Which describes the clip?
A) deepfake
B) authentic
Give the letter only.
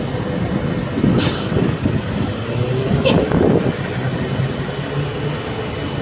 B